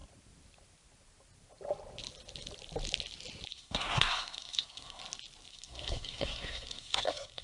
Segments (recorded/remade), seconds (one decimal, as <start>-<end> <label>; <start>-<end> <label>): 0.0-3.5 recorded; 3.5-5.0 remade; 5.0-5.5 recorded; 5.5-7.4 remade